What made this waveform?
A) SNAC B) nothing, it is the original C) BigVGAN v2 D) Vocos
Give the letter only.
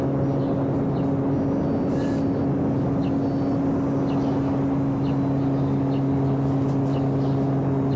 B